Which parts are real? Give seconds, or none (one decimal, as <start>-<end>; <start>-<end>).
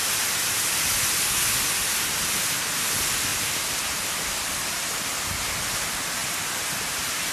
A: 0.0-3.3; 5.0-6.2